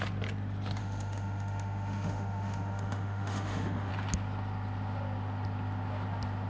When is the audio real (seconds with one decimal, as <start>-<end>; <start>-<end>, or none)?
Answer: 0.0-0.8; 3.9-6.5